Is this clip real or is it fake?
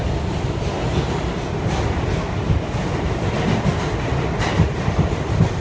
real